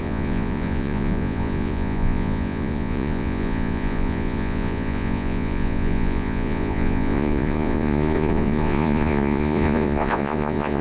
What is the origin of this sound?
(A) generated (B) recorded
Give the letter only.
A